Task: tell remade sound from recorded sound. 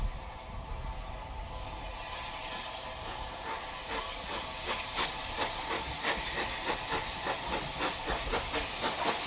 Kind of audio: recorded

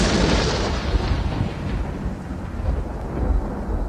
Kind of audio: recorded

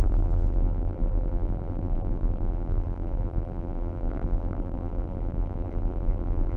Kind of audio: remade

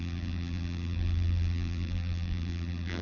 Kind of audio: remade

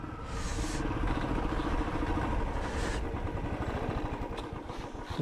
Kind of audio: recorded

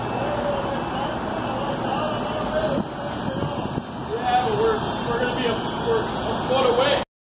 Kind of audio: recorded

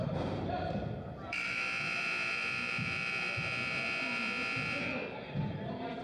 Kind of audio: remade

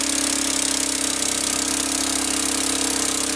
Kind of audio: recorded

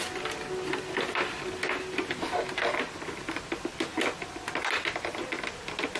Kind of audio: recorded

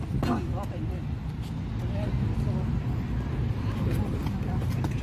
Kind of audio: recorded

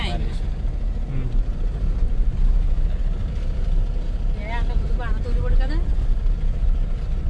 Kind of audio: recorded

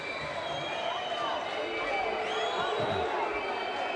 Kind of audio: recorded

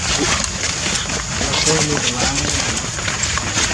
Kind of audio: recorded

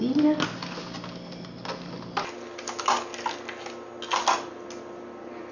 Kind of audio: recorded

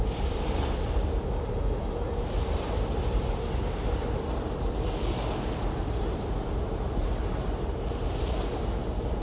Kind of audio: remade